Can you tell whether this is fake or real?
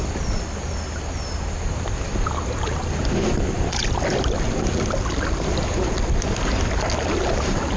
real